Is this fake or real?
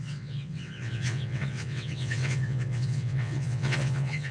fake